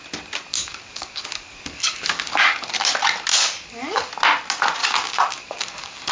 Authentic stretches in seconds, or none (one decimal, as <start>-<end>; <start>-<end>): 0.0-0.5; 2.9-3.3; 4.1-4.8